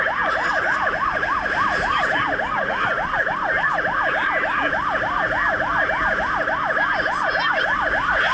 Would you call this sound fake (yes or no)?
no